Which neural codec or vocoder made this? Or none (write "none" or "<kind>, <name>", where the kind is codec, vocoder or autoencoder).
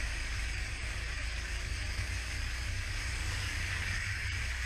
codec, DAC